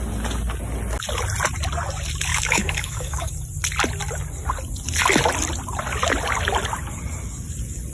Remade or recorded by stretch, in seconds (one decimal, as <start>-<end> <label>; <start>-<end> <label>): 0.0-2.3 recorded; 2.3-3.3 remade; 3.3-7.9 recorded